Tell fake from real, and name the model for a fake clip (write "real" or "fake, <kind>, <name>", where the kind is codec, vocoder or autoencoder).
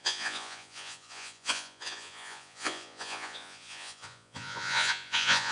fake, vocoder, Vocos